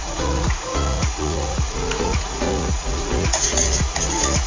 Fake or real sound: fake